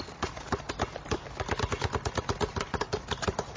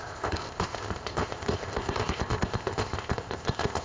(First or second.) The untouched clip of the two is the first